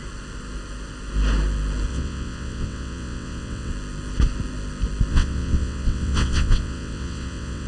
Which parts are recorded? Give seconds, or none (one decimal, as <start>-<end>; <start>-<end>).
0.0-1.9; 3.7-5.1